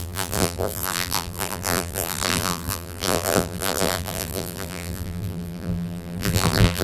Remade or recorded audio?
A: remade